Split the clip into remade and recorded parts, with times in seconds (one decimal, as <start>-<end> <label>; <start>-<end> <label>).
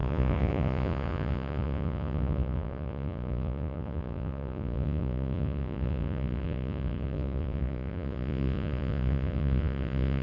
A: 0.0-10.2 remade